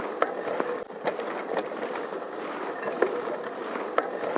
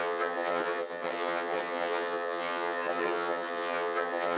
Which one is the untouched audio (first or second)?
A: first